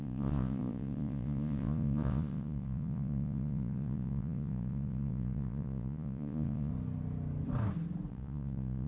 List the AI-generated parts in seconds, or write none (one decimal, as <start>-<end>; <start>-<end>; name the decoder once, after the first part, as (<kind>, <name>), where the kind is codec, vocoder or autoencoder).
0.0-6.7 (vocoder, Vocos); 8.1-8.9